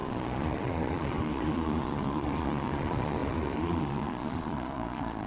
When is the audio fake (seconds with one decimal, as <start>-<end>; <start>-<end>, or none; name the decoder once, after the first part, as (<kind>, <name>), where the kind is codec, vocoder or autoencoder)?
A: 0.0-5.3 (vocoder, Vocos)